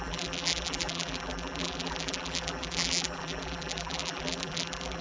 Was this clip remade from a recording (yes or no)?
yes